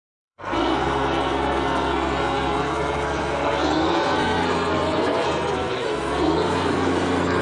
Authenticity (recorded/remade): remade